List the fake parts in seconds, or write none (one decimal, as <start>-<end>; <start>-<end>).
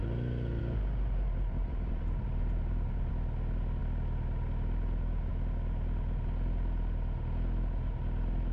1.6-3.1